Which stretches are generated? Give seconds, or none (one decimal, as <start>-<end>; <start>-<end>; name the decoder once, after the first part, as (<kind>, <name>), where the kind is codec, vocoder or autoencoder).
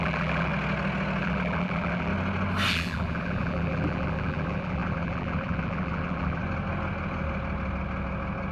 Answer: 0.0-0.5 (vocoder, BigVGAN v2); 1.2-2.1; 2.7-6.4